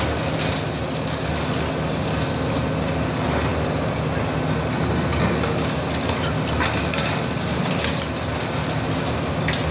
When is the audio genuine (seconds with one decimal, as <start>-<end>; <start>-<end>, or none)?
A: 0.0-9.7